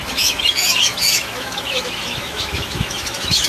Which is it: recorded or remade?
remade